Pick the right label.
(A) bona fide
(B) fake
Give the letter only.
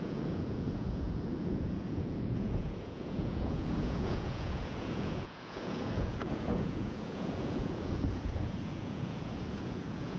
B